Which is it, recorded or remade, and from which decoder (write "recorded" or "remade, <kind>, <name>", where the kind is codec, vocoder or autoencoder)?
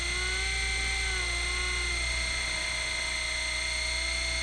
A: recorded